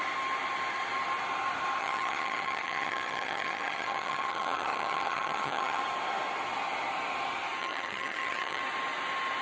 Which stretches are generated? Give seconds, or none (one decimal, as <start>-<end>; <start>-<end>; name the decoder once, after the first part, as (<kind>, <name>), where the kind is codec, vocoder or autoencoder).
1.8-5.8 (vocoder, HiFi-GAN); 7.6-8.6